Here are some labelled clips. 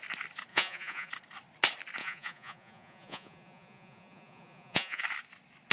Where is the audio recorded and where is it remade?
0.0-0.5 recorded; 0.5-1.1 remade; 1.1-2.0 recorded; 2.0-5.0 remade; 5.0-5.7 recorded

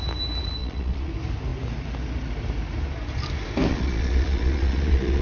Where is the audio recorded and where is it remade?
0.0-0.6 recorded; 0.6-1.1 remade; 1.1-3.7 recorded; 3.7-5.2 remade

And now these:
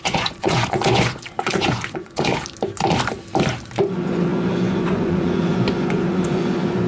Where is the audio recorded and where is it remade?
0.0-2.3 remade; 2.3-3.8 recorded; 3.8-6.9 remade

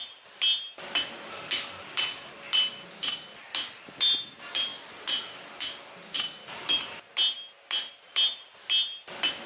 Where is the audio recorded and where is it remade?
0.0-9.5 recorded

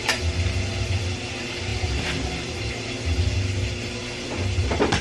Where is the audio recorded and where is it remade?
0.0-5.0 recorded